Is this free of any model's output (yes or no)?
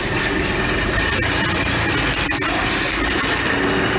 yes